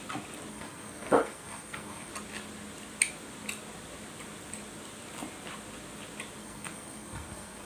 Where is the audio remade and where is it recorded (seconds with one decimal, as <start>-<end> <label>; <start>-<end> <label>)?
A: 0.0-0.5 recorded; 0.5-2.1 remade; 2.1-6.4 recorded; 6.4-7.7 remade